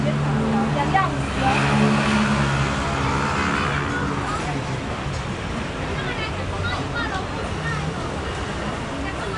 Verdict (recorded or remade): recorded